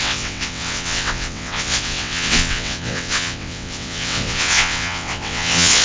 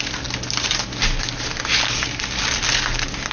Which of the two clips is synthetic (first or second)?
first